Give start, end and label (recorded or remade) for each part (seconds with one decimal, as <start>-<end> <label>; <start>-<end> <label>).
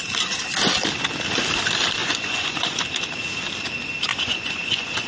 0.0-2.0 recorded; 2.0-2.8 remade; 2.8-4.1 recorded; 4.1-5.1 remade